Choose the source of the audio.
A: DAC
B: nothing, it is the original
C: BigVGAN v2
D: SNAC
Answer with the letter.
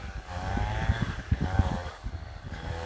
A